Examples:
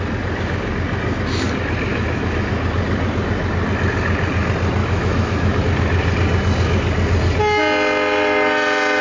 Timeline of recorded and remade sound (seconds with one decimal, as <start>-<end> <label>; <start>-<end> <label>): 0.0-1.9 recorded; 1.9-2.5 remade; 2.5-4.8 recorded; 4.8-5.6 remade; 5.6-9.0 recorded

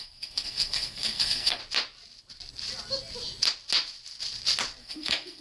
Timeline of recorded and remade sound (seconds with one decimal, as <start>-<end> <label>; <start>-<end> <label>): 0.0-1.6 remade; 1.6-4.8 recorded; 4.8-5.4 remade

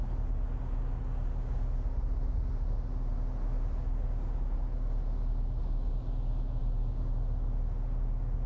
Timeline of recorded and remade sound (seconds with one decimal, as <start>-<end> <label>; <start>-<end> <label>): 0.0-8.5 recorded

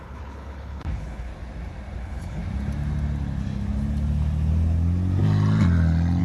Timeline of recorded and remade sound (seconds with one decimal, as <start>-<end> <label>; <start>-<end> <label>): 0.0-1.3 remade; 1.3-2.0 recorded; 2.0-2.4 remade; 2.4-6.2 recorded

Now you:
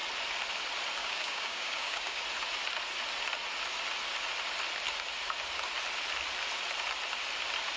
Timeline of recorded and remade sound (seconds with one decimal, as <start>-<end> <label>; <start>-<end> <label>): 0.0-1.0 recorded; 1.0-2.2 remade; 2.2-7.8 recorded

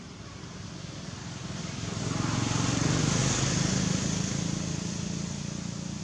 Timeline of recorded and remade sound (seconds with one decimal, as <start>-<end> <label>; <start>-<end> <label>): 0.0-1.2 recorded; 1.2-2.0 remade; 2.0-6.0 recorded

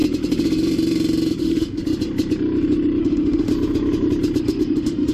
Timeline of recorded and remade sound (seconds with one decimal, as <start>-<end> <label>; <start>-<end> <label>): 0.0-1.4 recorded; 1.4-1.8 remade; 1.8-3.0 recorded; 3.0-3.5 remade; 3.5-4.4 recorded; 4.4-5.1 remade

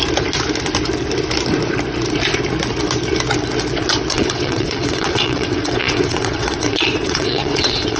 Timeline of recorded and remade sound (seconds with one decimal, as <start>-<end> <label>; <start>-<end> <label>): 0.0-4.1 recorded; 4.1-8.0 remade